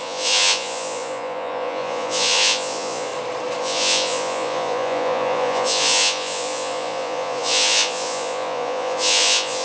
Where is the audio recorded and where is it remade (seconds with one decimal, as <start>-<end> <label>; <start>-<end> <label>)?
0.0-3.1 remade; 3.1-3.6 recorded; 3.6-9.6 remade